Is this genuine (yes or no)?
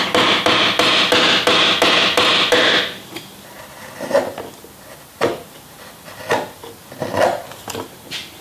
yes